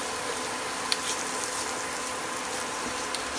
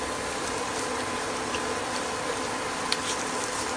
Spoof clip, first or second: second